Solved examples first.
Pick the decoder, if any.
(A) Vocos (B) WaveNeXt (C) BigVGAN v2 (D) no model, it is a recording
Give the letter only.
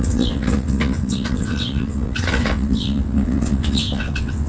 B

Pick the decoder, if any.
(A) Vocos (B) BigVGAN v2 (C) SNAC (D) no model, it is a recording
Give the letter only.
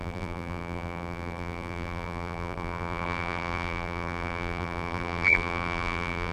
B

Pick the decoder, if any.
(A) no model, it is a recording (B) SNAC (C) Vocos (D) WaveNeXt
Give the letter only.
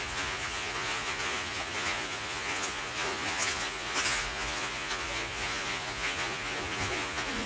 C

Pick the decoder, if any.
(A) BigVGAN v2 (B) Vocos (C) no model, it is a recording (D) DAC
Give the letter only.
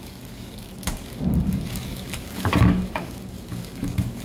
D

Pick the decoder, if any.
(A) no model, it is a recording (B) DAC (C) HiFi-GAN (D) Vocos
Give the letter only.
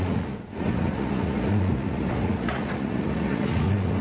D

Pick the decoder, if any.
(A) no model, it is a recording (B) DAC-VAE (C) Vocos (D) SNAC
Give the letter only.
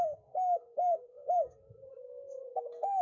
D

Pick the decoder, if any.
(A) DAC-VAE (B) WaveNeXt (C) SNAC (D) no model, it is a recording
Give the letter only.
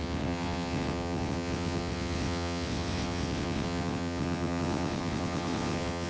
B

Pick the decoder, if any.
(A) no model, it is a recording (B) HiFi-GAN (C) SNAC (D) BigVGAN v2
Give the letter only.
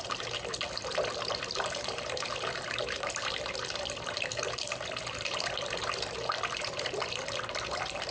D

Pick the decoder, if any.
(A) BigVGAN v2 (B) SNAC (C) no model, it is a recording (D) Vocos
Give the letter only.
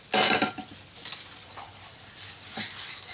C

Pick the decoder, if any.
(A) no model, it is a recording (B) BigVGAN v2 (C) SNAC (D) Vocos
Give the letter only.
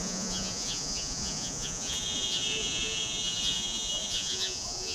D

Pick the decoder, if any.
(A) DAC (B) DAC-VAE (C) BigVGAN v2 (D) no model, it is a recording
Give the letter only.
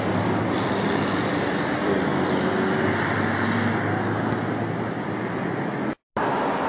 D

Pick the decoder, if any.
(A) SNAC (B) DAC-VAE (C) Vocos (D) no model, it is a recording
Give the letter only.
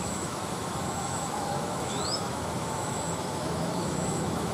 B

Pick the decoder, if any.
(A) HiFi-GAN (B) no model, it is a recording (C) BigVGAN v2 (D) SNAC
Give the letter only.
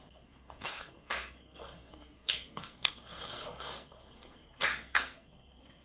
D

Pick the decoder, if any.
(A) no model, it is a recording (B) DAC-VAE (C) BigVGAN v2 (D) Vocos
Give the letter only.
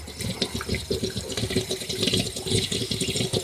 A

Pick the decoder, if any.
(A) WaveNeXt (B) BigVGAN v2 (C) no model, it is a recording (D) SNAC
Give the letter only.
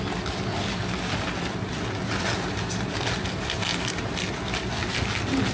C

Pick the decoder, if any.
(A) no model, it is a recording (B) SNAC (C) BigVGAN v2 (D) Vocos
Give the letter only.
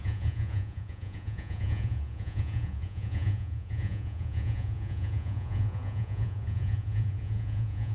D